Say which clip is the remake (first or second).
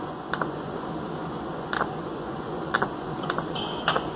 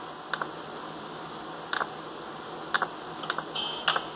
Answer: first